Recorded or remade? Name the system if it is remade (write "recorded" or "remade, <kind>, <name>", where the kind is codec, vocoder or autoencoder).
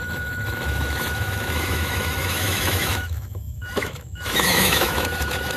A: remade, autoencoder, DAC-VAE